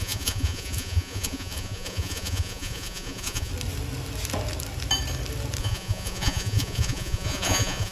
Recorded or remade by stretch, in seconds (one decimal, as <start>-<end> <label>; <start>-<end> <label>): 0.0-3.5 remade; 3.5-5.6 recorded; 5.6-7.9 remade